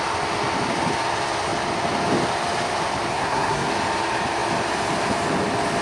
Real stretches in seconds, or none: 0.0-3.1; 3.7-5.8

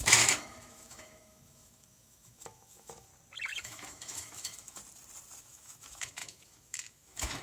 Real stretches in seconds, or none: 3.1-3.6; 4.8-5.4

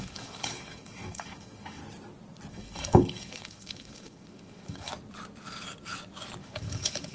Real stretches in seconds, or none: 1.8-2.5; 4.9-6.4

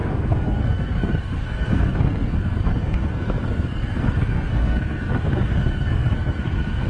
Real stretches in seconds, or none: none

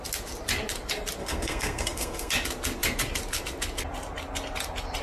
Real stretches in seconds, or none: 0.0-1.2; 2.3-5.0

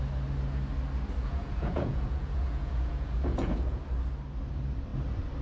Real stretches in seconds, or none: 0.0-1.2; 3.8-5.4